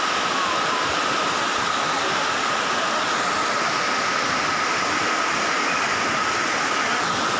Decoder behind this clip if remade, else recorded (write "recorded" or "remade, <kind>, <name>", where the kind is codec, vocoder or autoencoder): recorded